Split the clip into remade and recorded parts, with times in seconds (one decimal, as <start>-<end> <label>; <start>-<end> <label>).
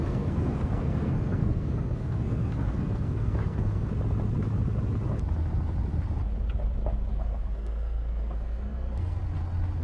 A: 0.0-3.9 remade; 3.9-7.1 recorded; 7.1-9.2 remade; 9.2-9.8 recorded